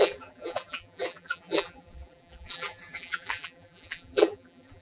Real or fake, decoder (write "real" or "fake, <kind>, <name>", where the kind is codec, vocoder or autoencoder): fake, vocoder, BigVGAN v2